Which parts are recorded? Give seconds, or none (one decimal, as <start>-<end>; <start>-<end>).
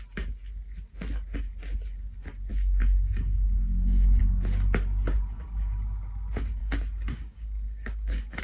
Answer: 0.0-2.5; 4.2-6.6